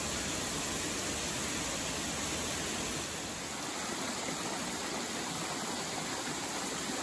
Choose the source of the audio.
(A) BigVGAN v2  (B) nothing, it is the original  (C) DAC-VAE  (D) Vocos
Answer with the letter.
B